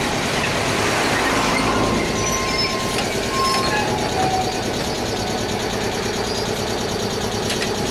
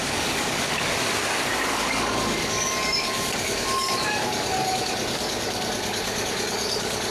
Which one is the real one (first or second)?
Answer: first